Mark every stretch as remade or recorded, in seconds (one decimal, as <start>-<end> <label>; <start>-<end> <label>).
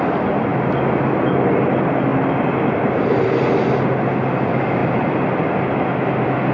0.0-2.1 recorded; 2.1-3.3 remade; 3.3-4.8 recorded; 4.8-5.6 remade; 5.6-6.5 recorded